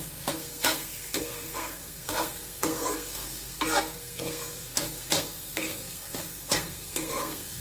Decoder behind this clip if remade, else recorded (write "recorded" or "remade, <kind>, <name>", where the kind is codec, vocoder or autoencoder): remade, codec, SNAC